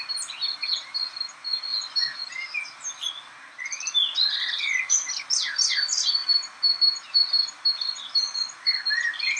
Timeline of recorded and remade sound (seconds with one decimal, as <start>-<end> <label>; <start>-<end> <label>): 0.0-9.4 recorded